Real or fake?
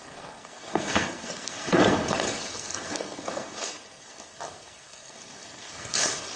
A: fake